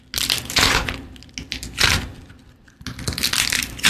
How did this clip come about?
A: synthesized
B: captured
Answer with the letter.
B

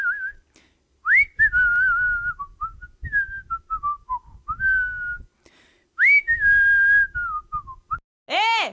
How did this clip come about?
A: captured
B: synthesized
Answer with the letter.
A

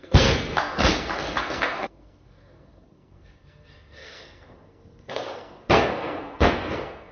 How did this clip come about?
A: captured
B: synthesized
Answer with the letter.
B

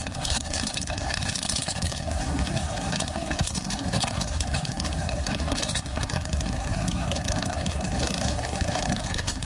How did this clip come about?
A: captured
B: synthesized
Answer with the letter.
B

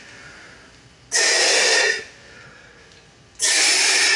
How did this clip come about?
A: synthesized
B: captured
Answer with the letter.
B